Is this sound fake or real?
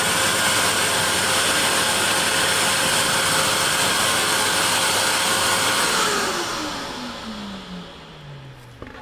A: real